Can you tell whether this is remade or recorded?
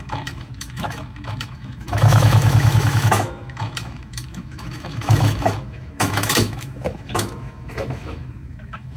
remade